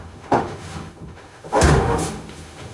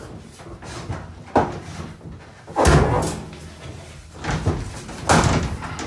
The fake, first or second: first